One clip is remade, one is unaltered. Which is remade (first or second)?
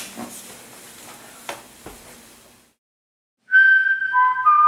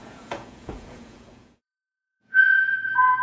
second